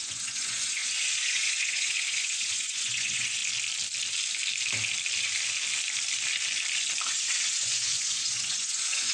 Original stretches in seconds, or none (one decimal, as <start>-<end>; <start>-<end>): 3.4-7.1